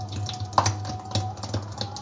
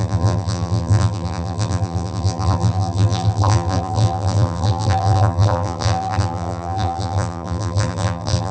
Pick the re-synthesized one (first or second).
second